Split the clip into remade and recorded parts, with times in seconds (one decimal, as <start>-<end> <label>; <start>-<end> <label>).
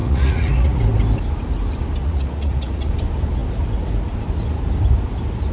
0.0-0.8 remade; 0.8-2.0 recorded; 2.0-2.9 remade; 2.9-5.5 recorded